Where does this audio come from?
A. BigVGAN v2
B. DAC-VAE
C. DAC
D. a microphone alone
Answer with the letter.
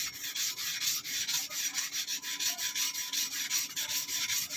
D